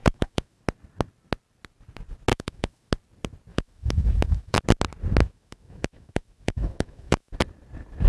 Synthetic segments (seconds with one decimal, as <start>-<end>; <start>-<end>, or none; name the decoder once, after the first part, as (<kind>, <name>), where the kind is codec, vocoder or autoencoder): 0.0-0.6 (autoencoder, DAC-VAE); 2.3-2.9; 3.5-4.6; 5.2-7.3